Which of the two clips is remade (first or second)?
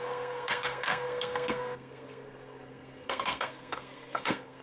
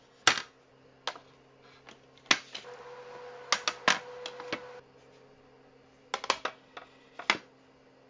first